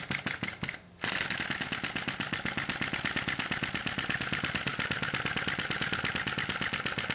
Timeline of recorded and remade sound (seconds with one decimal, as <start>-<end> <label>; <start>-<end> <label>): 0.0-7.1 recorded